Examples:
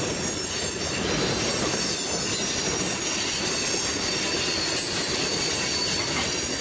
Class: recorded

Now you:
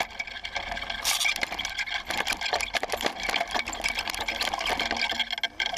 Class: recorded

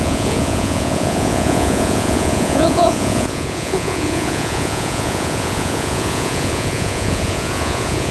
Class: remade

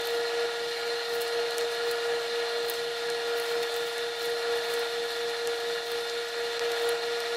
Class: recorded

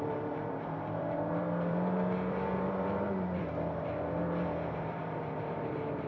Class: remade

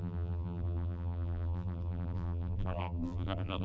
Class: remade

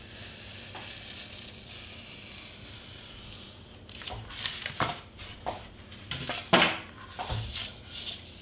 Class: recorded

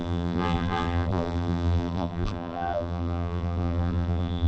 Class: remade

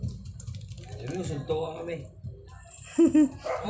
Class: recorded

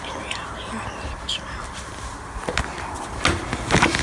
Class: recorded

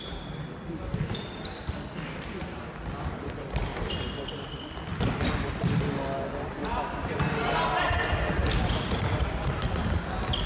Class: recorded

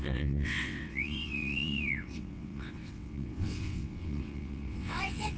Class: remade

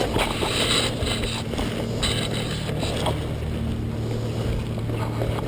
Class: recorded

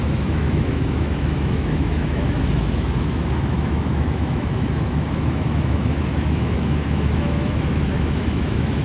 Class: remade